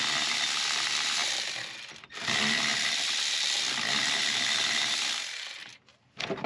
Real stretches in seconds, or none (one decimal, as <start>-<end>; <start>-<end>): 5.7-6.5